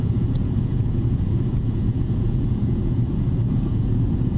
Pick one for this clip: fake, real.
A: fake